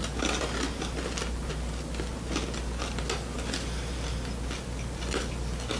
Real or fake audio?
real